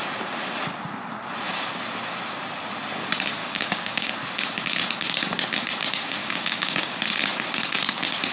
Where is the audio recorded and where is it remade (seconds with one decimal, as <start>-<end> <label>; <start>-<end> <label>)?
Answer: 0.0-3.4 recorded; 3.4-4.1 remade; 4.1-6.2 recorded; 6.2-7.0 remade; 7.0-8.3 recorded

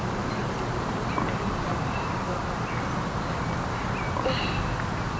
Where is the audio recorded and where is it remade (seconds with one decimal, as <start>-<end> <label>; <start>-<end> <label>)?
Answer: 0.0-0.4 recorded; 0.4-2.4 remade; 2.4-5.2 recorded

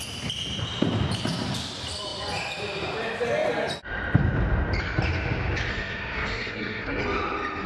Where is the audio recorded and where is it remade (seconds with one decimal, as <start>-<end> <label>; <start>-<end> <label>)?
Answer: 0.0-5.7 recorded; 5.7-7.0 remade; 7.0-7.7 recorded

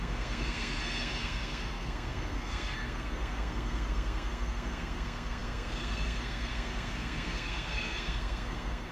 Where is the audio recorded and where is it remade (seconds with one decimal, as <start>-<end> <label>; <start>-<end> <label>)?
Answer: 0.0-8.9 remade

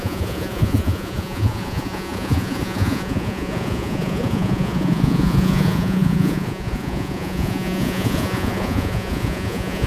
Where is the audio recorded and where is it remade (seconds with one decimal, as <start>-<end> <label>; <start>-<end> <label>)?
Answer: 0.0-9.9 remade